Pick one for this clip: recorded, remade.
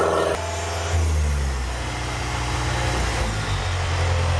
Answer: recorded